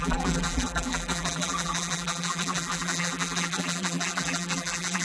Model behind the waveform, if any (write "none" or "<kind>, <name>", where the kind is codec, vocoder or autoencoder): vocoder, BigVGAN v2